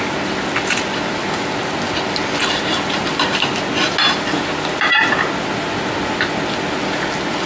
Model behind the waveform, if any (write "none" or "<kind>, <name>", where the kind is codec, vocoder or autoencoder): none